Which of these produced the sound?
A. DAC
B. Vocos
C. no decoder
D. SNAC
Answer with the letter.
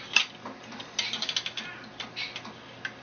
C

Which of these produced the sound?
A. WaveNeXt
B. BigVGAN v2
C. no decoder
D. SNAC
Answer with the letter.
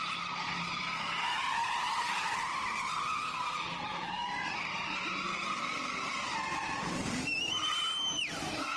B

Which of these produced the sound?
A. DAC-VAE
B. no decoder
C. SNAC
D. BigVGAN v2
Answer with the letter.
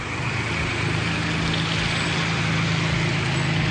B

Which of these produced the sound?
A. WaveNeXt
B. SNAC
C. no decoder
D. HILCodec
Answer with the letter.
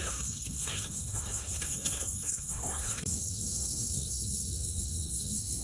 B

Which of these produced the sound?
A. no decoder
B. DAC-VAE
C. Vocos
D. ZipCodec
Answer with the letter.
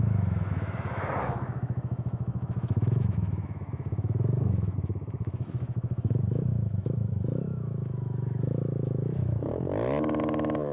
B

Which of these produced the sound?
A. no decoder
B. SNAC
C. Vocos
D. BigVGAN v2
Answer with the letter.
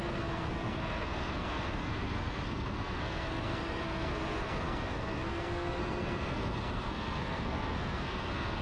B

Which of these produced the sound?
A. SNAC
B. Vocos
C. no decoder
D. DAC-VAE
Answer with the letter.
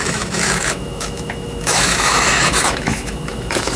D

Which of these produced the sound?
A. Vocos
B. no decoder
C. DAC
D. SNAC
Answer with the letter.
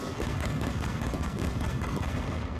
D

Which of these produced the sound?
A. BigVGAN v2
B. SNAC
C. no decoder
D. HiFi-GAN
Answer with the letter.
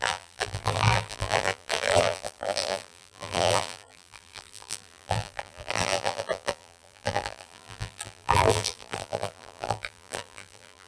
A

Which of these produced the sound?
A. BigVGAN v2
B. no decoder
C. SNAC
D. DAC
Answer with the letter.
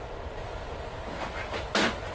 B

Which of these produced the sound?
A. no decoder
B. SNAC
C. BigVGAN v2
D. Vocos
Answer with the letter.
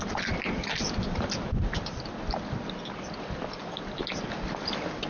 A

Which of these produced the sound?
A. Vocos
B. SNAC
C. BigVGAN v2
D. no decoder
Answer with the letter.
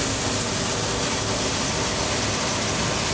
D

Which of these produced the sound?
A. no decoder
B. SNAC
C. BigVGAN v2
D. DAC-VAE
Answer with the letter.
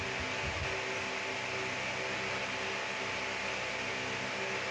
A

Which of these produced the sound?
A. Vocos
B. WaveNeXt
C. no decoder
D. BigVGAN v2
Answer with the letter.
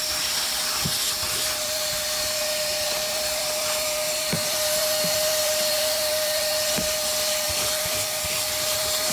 D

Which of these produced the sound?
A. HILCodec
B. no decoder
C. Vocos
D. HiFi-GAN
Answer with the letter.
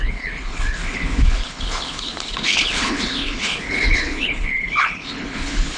A